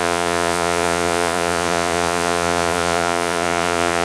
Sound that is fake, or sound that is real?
fake